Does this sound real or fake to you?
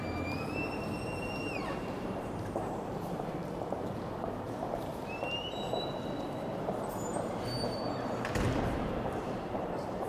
fake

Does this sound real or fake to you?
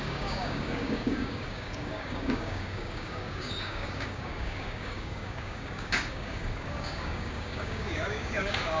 fake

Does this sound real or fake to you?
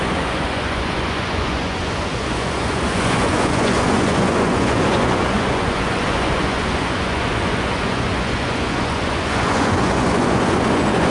fake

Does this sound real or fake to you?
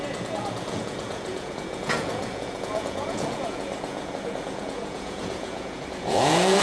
fake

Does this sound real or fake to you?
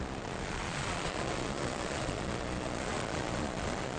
fake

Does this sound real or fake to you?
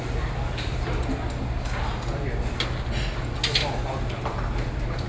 real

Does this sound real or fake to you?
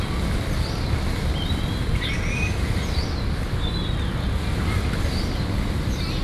real